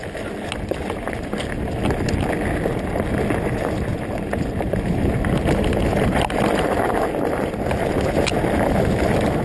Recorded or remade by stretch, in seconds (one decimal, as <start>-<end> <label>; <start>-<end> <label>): 0.0-9.4 recorded